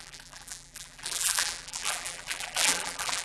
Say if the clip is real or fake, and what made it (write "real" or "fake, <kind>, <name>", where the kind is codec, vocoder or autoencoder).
fake, vocoder, BigVGAN v2